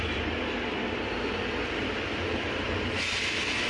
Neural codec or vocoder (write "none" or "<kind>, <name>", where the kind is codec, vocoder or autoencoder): vocoder, BigVGAN v2